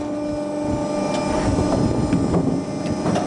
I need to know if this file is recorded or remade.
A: recorded